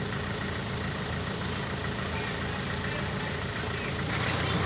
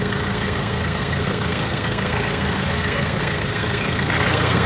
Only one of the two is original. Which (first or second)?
first